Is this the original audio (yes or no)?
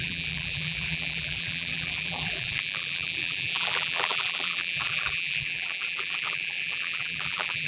no